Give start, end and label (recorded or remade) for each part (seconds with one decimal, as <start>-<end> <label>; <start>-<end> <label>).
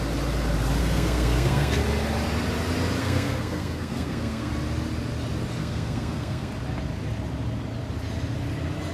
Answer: 0.0-0.8 recorded; 0.8-1.8 remade; 1.8-3.0 recorded; 3.0-4.5 remade; 4.5-5.6 recorded; 5.6-6.5 remade; 6.5-8.9 recorded